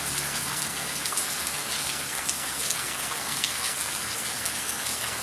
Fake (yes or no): yes